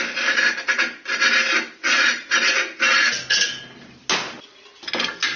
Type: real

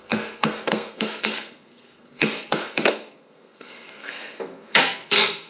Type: fake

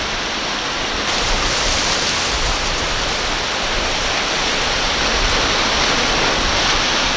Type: real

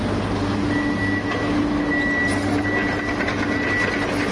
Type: real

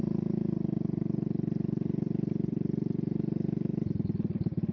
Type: real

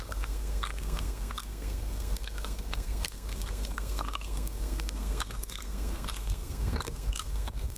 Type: fake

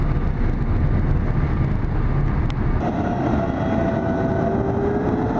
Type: real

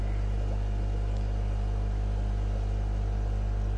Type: real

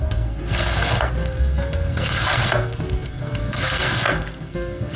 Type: fake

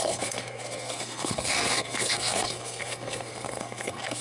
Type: fake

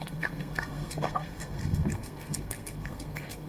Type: fake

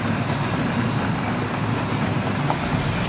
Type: real